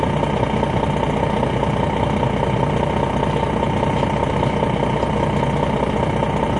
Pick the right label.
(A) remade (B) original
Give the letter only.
B